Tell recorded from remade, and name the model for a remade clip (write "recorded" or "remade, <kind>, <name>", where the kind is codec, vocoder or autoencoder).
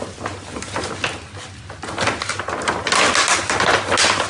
recorded